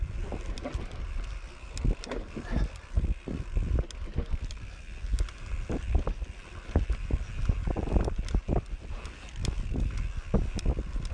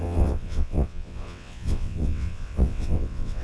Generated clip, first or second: second